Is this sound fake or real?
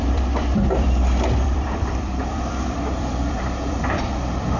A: fake